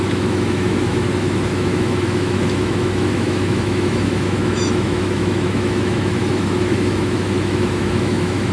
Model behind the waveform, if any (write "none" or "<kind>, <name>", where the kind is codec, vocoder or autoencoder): autoencoder, DAC-VAE